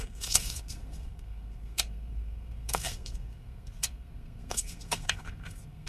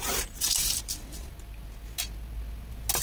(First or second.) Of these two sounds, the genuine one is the second